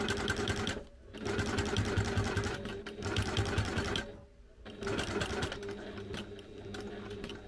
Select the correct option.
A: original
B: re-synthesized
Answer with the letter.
A